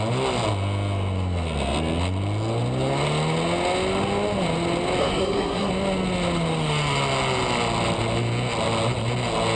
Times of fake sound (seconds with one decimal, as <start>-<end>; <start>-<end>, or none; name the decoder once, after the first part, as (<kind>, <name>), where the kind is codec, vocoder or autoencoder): 5.0-5.7 (codec, SNAC)